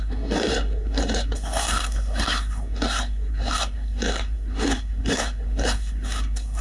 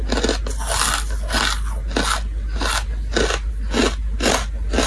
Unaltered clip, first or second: second